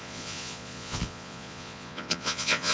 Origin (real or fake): fake